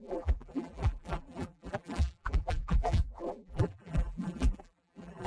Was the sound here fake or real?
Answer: fake